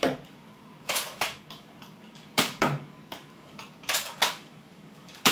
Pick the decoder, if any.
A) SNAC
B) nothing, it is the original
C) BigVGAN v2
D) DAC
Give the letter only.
D